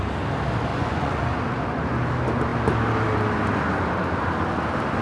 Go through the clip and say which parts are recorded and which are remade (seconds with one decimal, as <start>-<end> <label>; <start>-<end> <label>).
0.0-0.7 recorded; 0.7-1.2 remade; 1.2-5.0 recorded